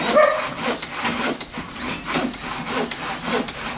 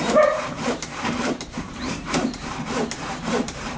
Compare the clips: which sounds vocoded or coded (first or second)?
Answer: second